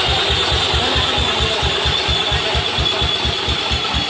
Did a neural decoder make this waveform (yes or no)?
no